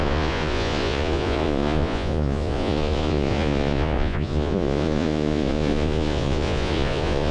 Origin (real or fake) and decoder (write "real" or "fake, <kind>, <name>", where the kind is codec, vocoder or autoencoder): fake, vocoder, Vocos